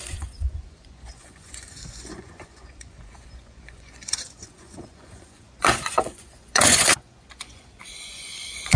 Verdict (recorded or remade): remade